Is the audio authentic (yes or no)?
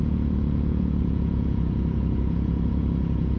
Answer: no